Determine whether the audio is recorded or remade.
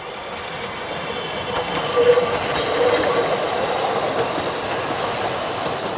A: recorded